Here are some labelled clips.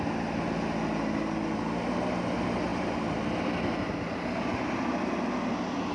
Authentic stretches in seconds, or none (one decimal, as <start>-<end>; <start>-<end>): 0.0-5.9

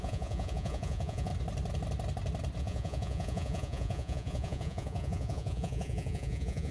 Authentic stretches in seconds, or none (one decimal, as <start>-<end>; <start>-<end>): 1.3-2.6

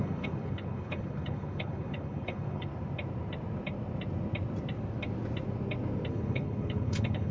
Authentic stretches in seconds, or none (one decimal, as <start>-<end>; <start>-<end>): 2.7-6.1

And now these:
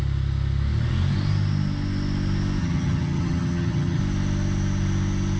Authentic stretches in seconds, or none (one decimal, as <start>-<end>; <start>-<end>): 0.0-2.6; 4.0-5.4